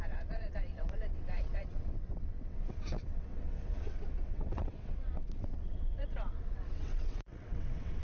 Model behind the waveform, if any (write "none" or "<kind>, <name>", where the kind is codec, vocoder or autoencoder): vocoder, WaveNeXt